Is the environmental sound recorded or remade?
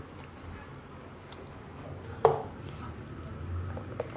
recorded